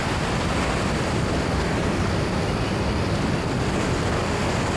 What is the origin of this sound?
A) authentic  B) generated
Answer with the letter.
A